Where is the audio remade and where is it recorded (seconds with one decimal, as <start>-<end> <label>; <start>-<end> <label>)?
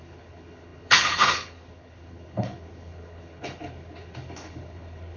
0.0-5.2 remade